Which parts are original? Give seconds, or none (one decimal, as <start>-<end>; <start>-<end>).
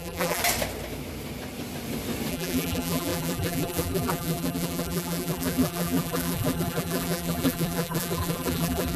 0.4-2.3